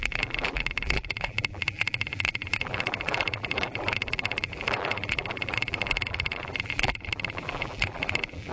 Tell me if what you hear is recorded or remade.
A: remade